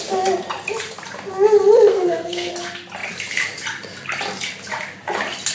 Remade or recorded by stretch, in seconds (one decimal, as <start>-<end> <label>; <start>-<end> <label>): 0.0-1.9 recorded; 1.9-2.5 remade; 2.5-5.5 recorded